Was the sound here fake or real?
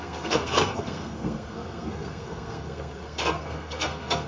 fake